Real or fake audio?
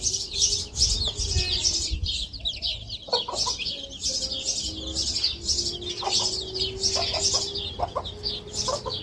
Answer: real